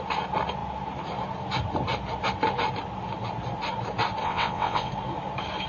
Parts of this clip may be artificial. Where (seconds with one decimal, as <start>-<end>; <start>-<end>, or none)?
4.2-4.9